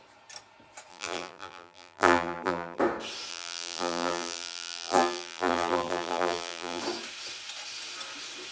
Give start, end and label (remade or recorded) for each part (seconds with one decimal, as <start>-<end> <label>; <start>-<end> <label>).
0.0-0.9 recorded; 0.9-2.8 remade; 2.8-3.3 recorded; 3.3-6.8 remade; 6.8-8.5 recorded